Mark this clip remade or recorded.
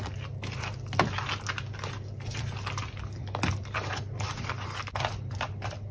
recorded